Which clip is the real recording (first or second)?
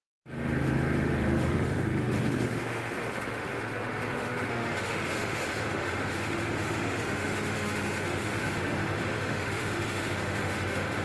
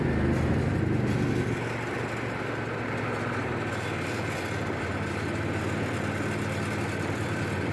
second